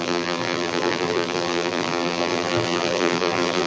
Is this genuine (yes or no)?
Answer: no